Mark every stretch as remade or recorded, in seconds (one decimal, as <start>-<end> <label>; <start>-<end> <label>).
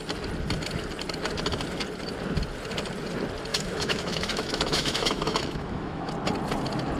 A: 0.0-3.5 recorded; 3.5-6.1 remade; 6.1-7.0 recorded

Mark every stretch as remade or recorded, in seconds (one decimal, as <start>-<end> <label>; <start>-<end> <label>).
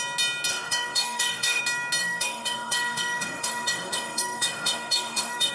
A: 0.0-0.5 recorded; 0.5-1.6 remade; 1.6-2.0 recorded; 2.0-5.5 remade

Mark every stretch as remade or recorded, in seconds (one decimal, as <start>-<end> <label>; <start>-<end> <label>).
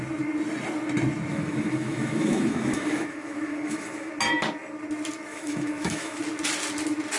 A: 0.0-1.3 recorded; 1.3-4.1 remade; 4.1-5.3 recorded; 5.3-6.2 remade; 6.2-7.2 recorded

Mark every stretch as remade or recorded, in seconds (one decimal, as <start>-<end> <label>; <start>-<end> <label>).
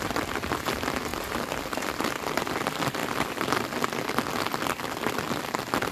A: 0.0-5.9 recorded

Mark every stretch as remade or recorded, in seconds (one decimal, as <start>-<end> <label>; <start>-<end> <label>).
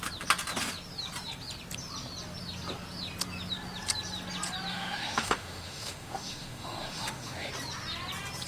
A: 0.0-4.7 recorded; 4.7-7.5 remade; 7.5-8.5 recorded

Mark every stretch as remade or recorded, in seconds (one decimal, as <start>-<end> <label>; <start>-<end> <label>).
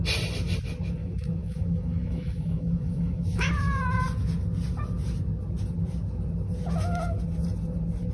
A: 0.0-1.0 recorded; 1.0-3.5 remade; 3.5-8.1 recorded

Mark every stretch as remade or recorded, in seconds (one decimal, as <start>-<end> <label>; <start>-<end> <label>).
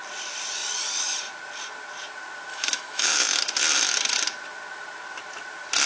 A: 0.0-2.5 recorded; 2.5-3.4 remade; 3.4-5.9 recorded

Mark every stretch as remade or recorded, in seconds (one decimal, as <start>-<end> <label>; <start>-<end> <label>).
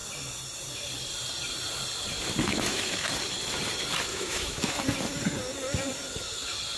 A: 0.0-2.5 recorded; 2.5-3.1 remade; 3.1-4.1 recorded; 4.1-4.8 remade; 4.8-6.8 recorded